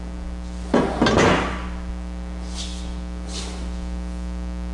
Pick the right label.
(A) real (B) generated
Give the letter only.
A